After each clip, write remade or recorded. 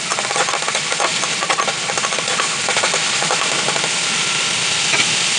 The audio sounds remade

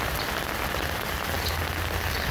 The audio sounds recorded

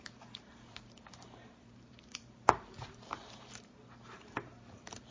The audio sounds remade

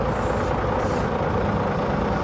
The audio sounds recorded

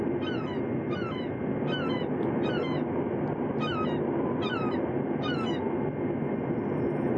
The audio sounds recorded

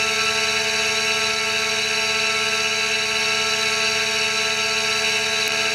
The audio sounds recorded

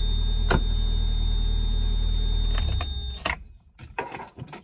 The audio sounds recorded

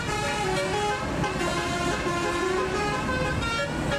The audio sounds recorded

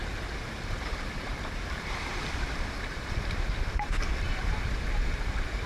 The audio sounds remade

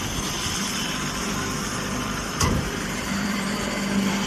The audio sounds remade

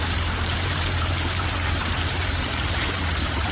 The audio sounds remade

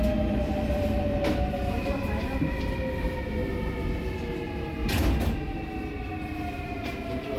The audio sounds recorded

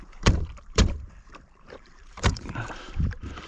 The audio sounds remade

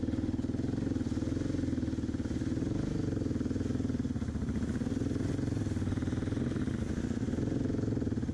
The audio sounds recorded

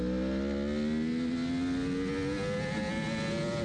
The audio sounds recorded